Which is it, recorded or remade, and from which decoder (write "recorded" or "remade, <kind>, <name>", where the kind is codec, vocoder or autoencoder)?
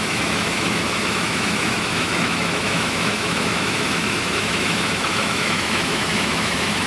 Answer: remade, autoencoder, DAC-VAE